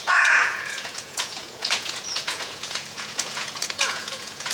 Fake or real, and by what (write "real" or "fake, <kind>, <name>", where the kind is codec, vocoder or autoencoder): fake, vocoder, Vocos